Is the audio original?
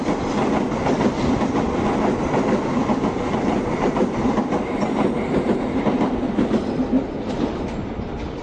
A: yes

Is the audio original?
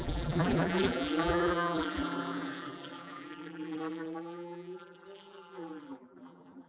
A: no